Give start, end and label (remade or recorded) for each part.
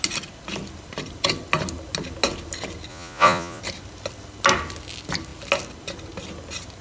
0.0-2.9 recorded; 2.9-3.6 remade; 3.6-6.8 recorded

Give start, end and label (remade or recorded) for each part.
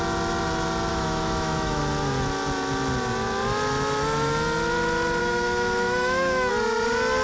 0.0-0.9 recorded; 0.9-1.8 remade; 1.8-5.2 recorded; 5.2-6.5 remade; 6.5-7.2 recorded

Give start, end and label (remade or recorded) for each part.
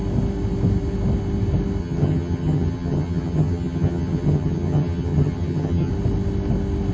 0.0-1.8 recorded; 1.8-5.9 remade; 5.9-6.9 recorded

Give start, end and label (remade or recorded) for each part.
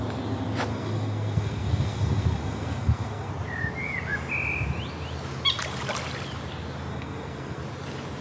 0.0-0.7 recorded; 0.7-3.3 remade; 3.3-6.9 recorded; 6.9-7.6 remade; 7.6-8.2 recorded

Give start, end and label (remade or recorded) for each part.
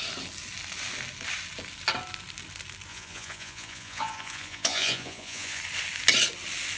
0.0-2.9 recorded; 2.9-5.6 remade; 5.6-6.8 recorded